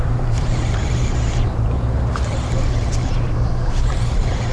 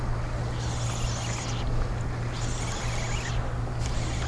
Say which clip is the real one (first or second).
second